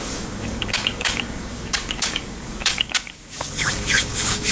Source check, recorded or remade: remade